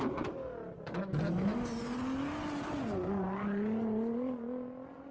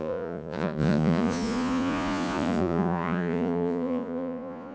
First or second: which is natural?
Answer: first